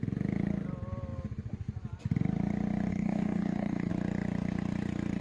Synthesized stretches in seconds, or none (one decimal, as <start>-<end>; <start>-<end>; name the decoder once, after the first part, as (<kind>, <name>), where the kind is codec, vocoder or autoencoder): 2.9-3.9 (codec, DAC)